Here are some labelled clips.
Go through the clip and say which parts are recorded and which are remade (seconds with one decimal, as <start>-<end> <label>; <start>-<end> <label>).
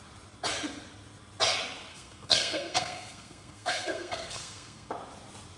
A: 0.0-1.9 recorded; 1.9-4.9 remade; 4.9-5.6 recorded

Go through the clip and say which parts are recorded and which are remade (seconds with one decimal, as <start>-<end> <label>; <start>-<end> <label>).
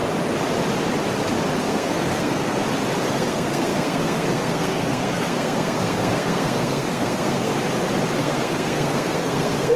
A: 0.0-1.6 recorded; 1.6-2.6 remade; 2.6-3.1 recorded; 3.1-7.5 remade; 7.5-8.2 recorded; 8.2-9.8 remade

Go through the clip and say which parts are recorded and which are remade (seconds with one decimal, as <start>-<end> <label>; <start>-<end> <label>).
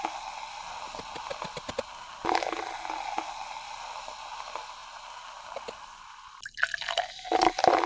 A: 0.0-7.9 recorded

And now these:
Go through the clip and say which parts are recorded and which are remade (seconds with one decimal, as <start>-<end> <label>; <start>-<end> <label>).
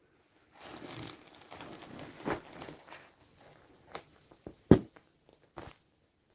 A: 0.0-6.3 recorded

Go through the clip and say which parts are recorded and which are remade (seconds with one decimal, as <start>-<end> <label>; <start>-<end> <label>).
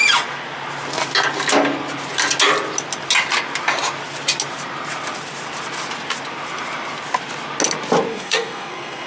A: 0.0-8.1 recorded; 8.1-9.1 remade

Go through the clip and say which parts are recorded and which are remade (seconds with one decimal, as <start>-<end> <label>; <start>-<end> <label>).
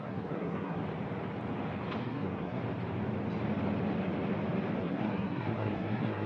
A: 0.0-0.8 remade; 0.8-2.0 recorded; 2.0-2.6 remade; 2.6-4.8 recorded; 4.8-6.3 remade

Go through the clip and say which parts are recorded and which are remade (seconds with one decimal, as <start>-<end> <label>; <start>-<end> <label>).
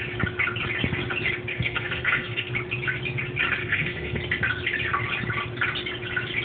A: 0.0-1.5 recorded; 1.5-2.5 remade; 2.5-3.6 recorded; 3.6-4.2 remade; 4.2-6.4 recorded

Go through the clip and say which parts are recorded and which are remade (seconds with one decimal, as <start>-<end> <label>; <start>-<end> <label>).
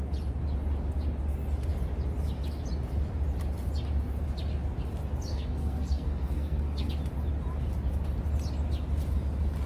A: 0.0-5.3 recorded; 5.3-6.9 remade; 6.9-9.7 recorded